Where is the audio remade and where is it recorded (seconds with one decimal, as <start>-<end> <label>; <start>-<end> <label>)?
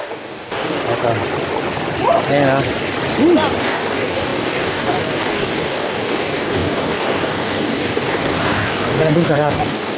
0.0-0.8 remade; 0.8-3.6 recorded; 3.6-10.0 remade